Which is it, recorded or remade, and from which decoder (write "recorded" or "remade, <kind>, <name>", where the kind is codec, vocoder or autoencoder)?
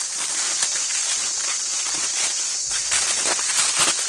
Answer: recorded